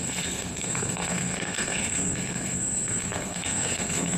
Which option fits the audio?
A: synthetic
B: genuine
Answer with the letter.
A